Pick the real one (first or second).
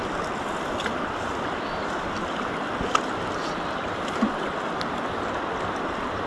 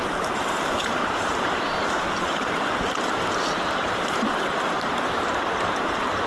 first